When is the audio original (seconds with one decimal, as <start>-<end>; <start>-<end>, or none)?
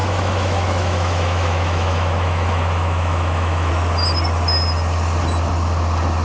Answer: 3.7-6.2